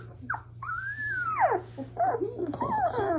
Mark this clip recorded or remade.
recorded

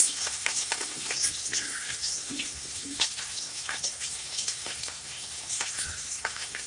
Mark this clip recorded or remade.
remade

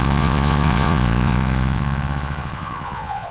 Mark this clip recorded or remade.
remade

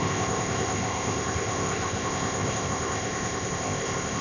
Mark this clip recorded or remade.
remade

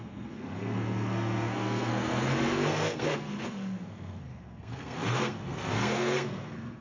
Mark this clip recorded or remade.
remade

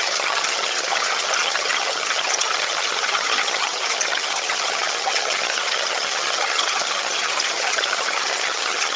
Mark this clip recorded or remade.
remade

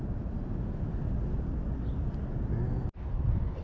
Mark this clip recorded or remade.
recorded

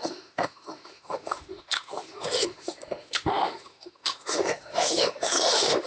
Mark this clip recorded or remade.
remade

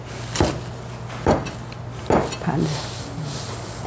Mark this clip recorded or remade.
recorded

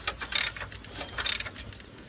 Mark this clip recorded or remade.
recorded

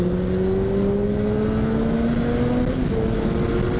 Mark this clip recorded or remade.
recorded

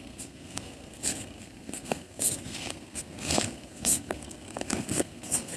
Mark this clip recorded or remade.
remade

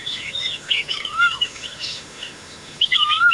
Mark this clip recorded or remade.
remade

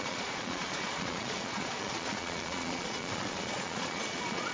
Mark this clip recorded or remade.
remade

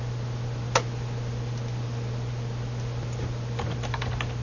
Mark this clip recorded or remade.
recorded